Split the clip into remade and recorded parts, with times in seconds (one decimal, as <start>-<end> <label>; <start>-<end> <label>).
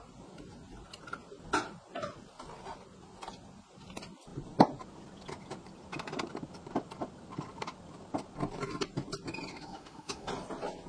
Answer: 0.0-9.5 recorded; 9.5-10.3 remade; 10.3-10.9 recorded